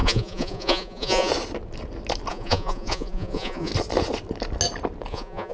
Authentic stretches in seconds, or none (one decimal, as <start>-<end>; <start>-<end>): 1.3-2.3; 3.7-5.1